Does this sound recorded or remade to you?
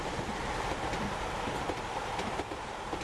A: recorded